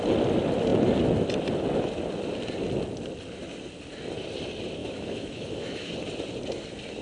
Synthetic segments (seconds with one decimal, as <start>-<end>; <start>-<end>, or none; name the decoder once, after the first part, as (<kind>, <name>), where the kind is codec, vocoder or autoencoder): 4.8-5.9 (autoencoder, DAC-VAE)